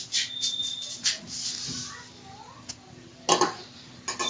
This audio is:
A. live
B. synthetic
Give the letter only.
A